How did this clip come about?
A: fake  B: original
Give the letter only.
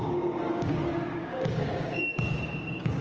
A